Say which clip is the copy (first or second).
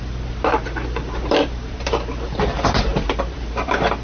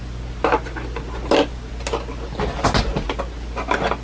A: first